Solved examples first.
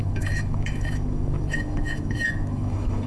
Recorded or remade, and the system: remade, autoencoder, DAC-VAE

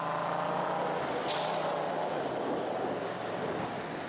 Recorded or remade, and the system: recorded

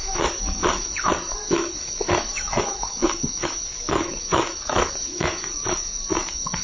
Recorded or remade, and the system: remade, autoencoder, DAC-VAE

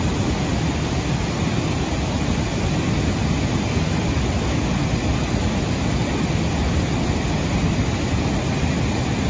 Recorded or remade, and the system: recorded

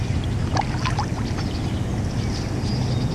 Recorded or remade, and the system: recorded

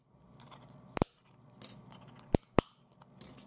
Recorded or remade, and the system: recorded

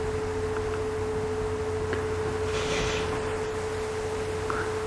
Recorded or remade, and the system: recorded